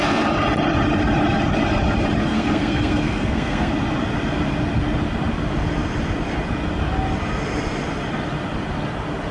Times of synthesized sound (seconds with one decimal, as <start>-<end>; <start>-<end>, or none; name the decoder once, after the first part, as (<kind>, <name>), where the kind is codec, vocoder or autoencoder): 2.2-3.7 (codec, SNAC)

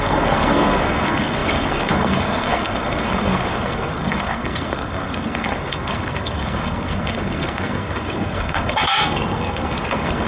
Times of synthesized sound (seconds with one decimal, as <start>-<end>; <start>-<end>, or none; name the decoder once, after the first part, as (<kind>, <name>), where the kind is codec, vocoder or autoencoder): 0.0-10.3 (codec, SNAC)

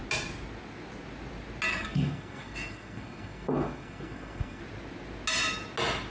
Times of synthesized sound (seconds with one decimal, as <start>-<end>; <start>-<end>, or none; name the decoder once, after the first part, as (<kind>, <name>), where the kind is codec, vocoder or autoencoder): 1.7-4.6 (codec, SNAC)

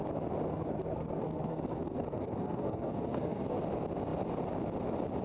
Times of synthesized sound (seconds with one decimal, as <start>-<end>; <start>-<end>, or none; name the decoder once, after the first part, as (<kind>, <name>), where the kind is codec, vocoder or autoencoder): 0.5-3.6 (codec, SNAC)